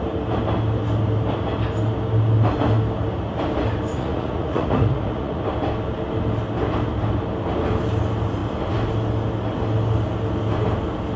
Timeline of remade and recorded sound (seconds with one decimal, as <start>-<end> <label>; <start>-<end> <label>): 0.0-3.9 recorded; 3.9-5.4 remade; 5.4-11.2 recorded